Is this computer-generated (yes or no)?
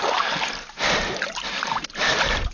yes